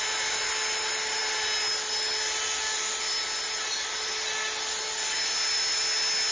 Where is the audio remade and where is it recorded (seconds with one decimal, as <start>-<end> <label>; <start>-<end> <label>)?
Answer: 0.0-6.3 recorded